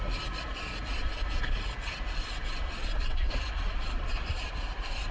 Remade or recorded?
recorded